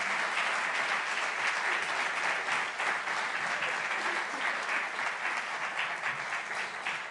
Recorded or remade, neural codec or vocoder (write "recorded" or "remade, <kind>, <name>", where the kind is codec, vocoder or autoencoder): recorded